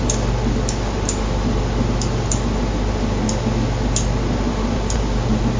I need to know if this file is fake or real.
real